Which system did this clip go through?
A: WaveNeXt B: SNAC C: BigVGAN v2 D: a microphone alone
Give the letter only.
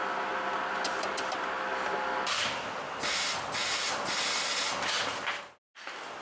D